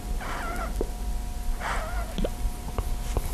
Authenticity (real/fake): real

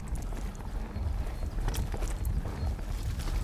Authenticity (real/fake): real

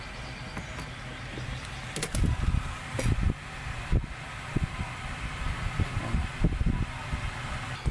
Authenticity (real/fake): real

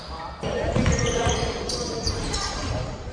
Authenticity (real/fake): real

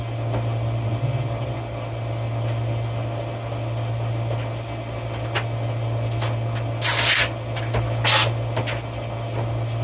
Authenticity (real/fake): real